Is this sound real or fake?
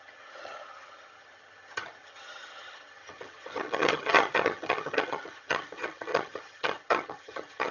fake